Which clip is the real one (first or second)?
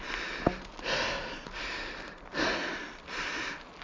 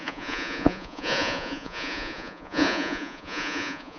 first